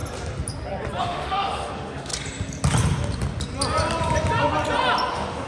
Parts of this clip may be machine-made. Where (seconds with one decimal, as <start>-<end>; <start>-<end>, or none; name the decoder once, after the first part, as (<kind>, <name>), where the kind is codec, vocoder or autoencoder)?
1.0-2.1 (autoencoder, DAC-VAE); 5.1-5.5